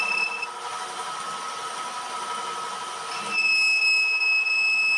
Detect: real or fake real